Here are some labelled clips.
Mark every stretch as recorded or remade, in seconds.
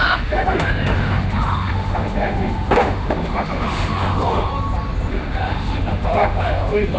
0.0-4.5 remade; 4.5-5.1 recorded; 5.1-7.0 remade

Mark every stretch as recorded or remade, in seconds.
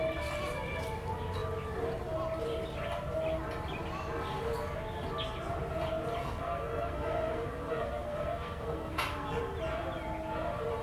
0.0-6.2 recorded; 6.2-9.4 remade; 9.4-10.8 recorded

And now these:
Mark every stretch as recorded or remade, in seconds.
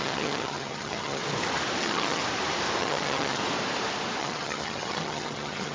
0.0-1.2 remade; 1.2-1.8 recorded; 1.8-2.2 remade; 2.2-2.8 recorded; 2.8-3.4 remade; 3.4-4.2 recorded; 4.2-5.7 remade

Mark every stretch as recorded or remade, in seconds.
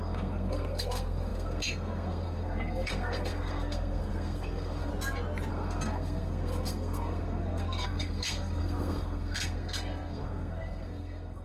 0.0-4.9 remade; 4.9-5.5 recorded; 5.5-11.4 remade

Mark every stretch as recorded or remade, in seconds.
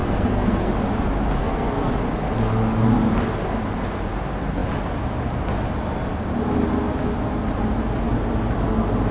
0.0-0.7 remade; 0.7-1.4 recorded; 1.4-1.9 remade; 1.9-9.1 recorded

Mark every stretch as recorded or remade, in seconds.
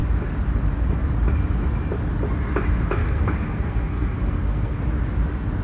0.0-3.0 recorded; 3.0-4.8 remade; 4.8-5.6 recorded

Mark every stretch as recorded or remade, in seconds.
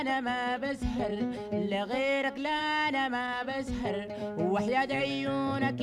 0.0-1.1 recorded; 1.1-2.6 remade; 2.6-4.2 recorded; 4.2-5.0 remade; 5.0-5.8 recorded